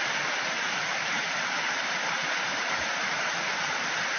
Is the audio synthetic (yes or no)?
no